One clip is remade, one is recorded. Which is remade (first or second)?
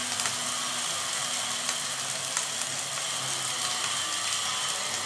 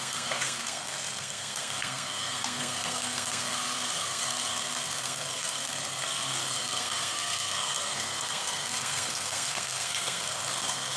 second